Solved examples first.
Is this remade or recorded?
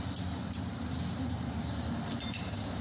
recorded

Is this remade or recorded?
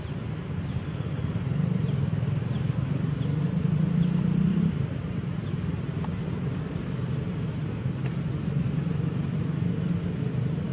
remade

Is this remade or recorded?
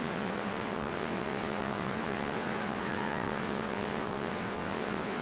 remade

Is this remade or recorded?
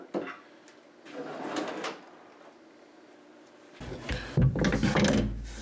recorded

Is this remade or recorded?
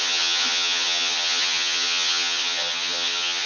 remade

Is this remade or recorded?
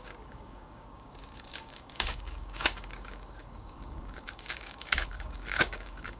remade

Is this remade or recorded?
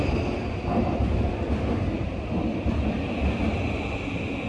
recorded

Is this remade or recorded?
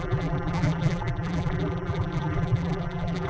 remade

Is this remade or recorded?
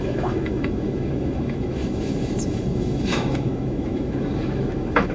remade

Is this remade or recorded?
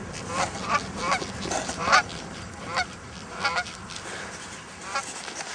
remade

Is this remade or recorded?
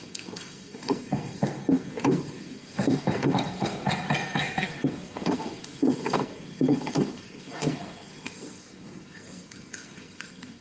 remade